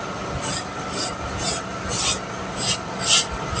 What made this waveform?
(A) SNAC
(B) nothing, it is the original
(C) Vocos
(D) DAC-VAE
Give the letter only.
B